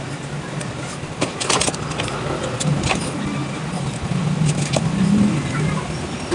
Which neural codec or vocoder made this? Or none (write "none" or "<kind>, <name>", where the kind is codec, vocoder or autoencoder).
none